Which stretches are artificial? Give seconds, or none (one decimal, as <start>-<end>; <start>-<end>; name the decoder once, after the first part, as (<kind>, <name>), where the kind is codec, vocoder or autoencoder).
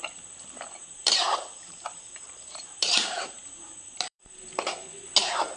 0.8-4.2 (vocoder, BigVGAN v2)